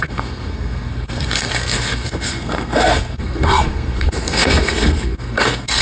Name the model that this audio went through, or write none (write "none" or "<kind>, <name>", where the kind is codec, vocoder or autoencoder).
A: codec, SNAC